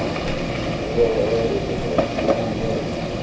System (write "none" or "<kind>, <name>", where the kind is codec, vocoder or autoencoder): none